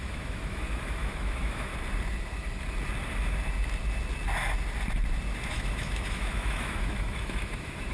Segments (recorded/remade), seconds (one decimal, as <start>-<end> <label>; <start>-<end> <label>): 0.0-1.7 remade; 1.7-5.5 recorded; 5.5-7.9 remade